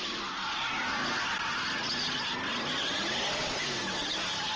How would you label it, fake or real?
real